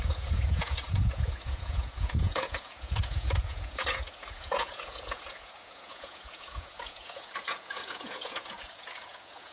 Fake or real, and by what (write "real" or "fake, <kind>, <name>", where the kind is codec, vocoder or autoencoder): fake, vocoder, Vocos